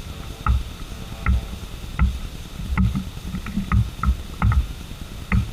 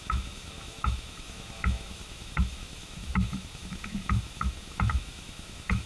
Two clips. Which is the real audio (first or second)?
first